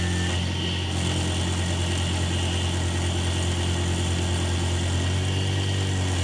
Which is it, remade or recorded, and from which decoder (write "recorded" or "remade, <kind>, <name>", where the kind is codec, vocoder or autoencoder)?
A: recorded